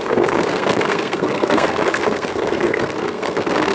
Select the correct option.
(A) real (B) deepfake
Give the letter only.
B